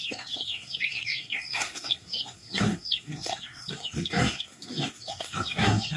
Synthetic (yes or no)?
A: yes